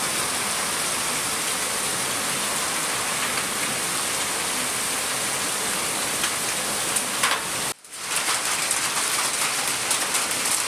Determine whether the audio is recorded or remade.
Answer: recorded